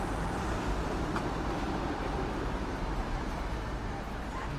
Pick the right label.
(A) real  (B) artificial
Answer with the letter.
B